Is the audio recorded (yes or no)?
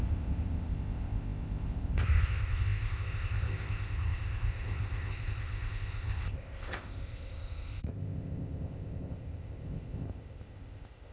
no